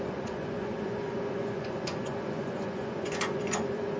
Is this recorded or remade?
remade